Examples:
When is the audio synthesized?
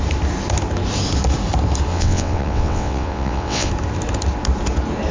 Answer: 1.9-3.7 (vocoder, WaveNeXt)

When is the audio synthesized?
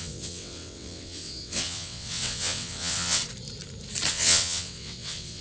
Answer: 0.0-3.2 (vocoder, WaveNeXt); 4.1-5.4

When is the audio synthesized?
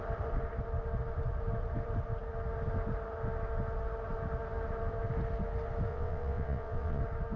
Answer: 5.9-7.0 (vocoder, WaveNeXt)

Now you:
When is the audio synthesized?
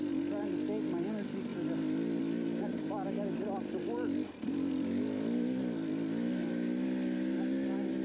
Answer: none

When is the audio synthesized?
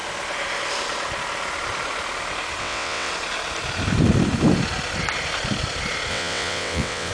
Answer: 2.6-3.1 (vocoder, WaveNeXt); 6.1-7.1